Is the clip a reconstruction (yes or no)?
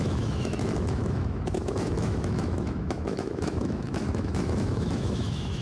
yes